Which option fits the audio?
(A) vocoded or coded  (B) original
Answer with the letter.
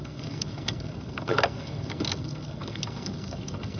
A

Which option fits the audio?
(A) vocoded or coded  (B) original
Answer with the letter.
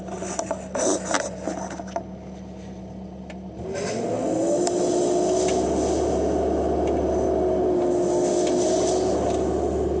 B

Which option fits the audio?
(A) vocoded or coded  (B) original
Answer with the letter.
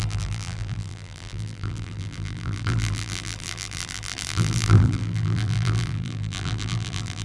A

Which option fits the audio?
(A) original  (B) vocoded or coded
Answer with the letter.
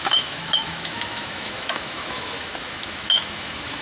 B